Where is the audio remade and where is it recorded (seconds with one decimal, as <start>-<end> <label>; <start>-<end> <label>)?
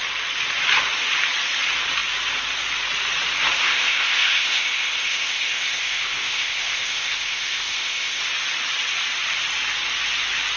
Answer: 0.0-3.6 recorded; 3.6-8.2 remade; 8.2-10.6 recorded